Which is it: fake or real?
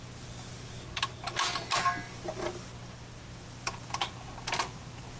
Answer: real